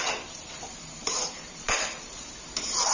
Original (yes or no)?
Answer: no